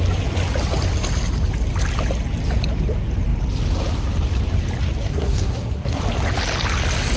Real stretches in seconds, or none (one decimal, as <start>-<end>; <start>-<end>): 0.0-5.0; 6.0-7.2